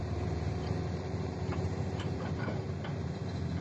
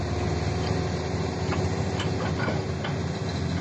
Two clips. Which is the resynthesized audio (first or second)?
first